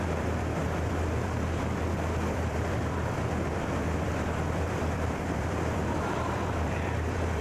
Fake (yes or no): yes